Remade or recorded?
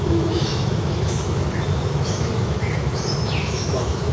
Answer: remade